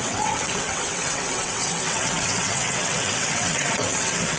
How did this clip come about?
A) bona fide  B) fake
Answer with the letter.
B